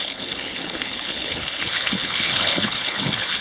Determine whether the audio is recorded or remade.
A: remade